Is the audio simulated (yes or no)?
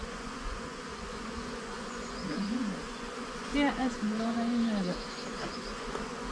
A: yes